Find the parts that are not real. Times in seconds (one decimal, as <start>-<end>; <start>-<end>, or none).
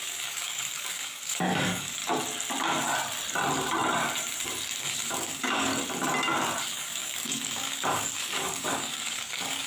0.0-2.0; 4.8-5.7; 6.6-9.7